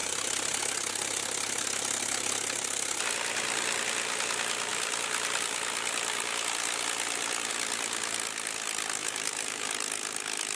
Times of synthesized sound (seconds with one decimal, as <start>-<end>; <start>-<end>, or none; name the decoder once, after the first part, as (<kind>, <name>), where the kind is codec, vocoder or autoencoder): 0.0-0.6 (vocoder, BigVGAN v2); 9.0-9.7